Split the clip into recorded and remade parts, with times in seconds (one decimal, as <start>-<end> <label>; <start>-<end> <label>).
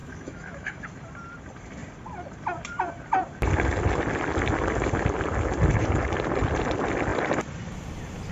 0.0-0.9 remade; 0.9-8.3 recorded